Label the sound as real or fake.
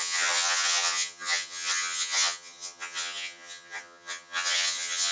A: fake